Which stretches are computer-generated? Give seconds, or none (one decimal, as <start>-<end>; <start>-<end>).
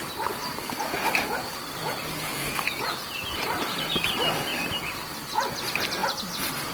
2.3-3.9